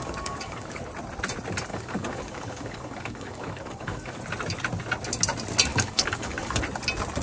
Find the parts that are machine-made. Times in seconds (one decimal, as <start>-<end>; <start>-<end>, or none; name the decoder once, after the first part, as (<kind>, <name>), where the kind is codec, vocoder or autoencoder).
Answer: 0.0-0.8 (codec, DAC); 1.7-4.2; 5.7-6.6